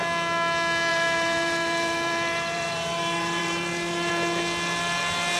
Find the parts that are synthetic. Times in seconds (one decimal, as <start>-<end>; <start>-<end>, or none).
0.9-4.1